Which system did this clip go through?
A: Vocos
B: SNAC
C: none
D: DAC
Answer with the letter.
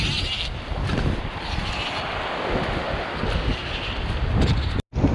C